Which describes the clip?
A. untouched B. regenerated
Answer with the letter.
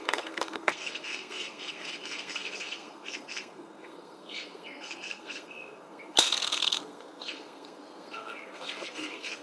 B